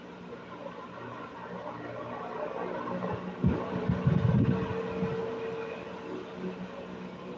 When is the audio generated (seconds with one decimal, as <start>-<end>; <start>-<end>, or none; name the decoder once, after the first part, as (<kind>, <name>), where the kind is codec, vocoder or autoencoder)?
none